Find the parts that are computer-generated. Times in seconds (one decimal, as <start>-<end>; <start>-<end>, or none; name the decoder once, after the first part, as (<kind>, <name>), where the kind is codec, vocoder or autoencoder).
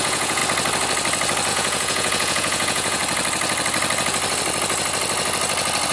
0.0-0.4 (vocoder, Vocos); 1.5-3.0